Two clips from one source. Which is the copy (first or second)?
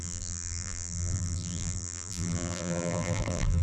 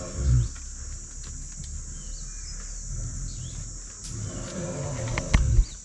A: first